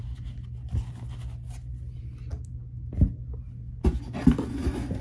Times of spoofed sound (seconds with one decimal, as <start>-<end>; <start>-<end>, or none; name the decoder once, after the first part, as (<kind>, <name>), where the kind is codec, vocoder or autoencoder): none